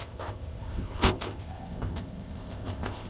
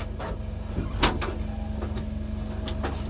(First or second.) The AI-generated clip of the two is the first